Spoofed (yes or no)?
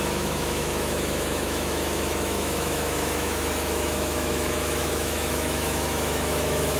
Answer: yes